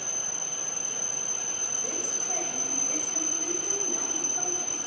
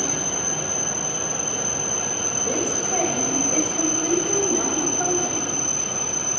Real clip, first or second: second